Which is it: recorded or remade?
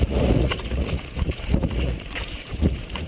remade